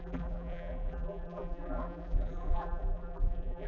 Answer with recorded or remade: remade